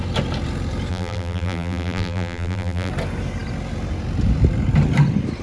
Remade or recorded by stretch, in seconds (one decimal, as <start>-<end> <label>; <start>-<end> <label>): 0.0-0.9 recorded; 0.9-2.9 remade; 2.9-5.4 recorded